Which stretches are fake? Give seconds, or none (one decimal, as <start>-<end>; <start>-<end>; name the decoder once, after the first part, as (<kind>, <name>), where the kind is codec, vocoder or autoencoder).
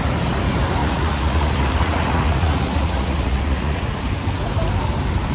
0.8-4.0 (vocoder, Vocos)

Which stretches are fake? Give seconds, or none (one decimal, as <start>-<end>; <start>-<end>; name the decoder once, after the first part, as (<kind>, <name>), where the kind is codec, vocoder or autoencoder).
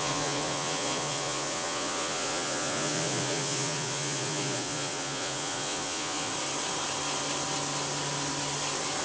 0.0-6.3 (vocoder, Vocos)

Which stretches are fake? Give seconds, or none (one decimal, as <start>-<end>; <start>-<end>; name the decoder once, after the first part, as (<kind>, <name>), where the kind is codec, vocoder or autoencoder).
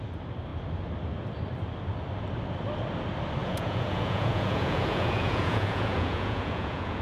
3.4-7.0 (vocoder, Vocos)